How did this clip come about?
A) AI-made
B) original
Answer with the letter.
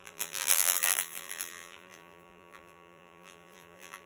A